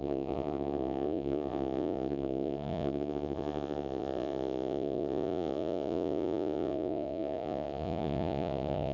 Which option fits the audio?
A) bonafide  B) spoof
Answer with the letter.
B